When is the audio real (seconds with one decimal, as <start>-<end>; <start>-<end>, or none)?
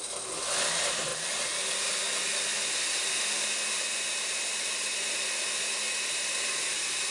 0.0-7.1